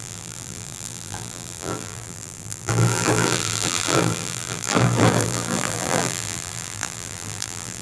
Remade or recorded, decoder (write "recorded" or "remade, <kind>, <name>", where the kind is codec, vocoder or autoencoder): remade, vocoder, BigVGAN v2